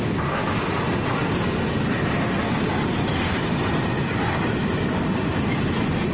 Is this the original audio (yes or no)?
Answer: yes